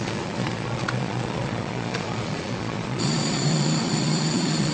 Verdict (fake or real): fake